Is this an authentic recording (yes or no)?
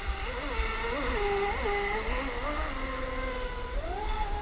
yes